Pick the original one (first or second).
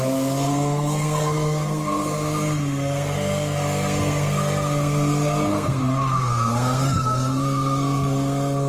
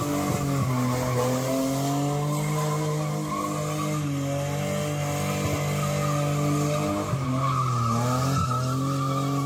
second